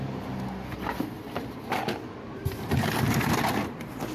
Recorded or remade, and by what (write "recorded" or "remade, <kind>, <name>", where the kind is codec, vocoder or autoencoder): recorded